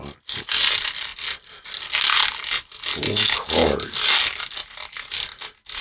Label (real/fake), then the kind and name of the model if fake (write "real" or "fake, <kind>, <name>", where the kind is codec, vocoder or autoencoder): real